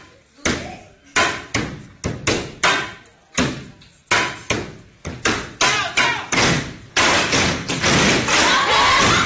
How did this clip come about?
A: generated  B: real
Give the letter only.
B